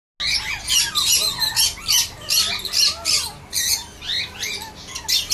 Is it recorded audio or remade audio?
recorded